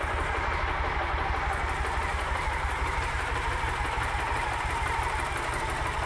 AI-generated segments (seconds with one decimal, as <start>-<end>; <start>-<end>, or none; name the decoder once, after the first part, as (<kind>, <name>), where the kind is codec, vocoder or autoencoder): 2.1-5.0 (vocoder, BigVGAN v2)

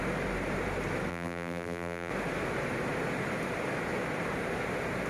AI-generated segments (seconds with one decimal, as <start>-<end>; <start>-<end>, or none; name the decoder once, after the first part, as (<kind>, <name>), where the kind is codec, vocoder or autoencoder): 1.1-2.1 (vocoder, BigVGAN v2)

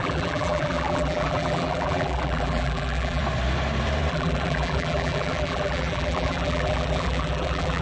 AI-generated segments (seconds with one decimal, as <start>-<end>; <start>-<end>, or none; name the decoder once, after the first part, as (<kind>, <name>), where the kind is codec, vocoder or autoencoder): 0.0-3.2 (vocoder, BigVGAN v2); 4.1-7.8

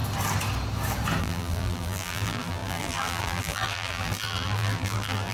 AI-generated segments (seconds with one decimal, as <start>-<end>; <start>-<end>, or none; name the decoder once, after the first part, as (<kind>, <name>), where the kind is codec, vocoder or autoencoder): 1.2-5.3 (vocoder, BigVGAN v2)

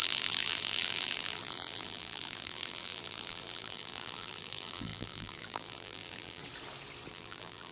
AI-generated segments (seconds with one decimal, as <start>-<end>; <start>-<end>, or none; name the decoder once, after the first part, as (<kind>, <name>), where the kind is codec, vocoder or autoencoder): 0.0-6.4 (vocoder, BigVGAN v2); 7.1-7.7

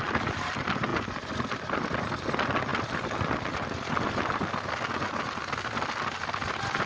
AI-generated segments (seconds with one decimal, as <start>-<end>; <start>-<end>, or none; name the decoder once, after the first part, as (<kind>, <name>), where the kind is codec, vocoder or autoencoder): 0.9-2.0 (vocoder, BigVGAN v2)